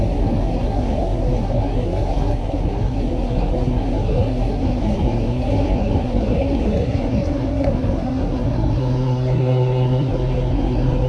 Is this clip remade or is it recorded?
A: remade